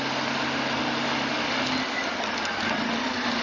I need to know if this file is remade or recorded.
recorded